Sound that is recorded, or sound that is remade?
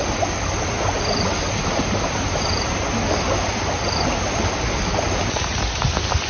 recorded